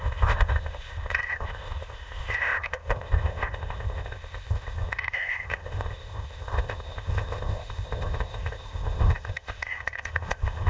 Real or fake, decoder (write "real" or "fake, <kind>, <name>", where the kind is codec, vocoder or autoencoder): fake, codec, ZipCodec